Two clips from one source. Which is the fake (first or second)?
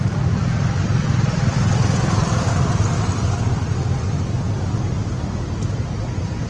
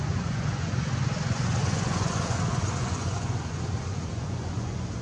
second